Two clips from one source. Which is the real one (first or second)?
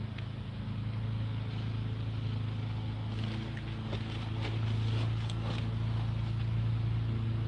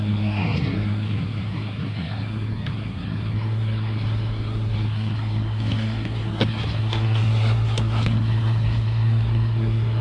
first